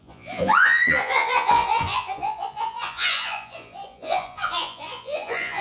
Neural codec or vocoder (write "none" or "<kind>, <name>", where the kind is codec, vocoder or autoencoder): vocoder, Vocos